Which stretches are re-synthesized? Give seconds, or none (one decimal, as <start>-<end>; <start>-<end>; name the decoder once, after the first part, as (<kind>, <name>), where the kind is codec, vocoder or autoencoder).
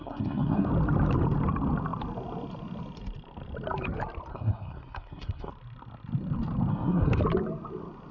0.0-0.7 (codec, SNAC); 4.3-5.5; 6.7-7.2